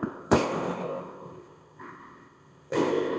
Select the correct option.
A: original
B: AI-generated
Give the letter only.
B